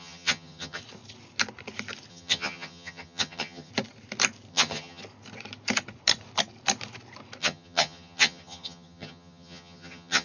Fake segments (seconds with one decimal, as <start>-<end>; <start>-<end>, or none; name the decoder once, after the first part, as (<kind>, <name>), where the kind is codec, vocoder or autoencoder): 0.0-0.8 (vocoder, HiFi-GAN); 2.1-3.7; 4.5-5.0; 7.4-10.2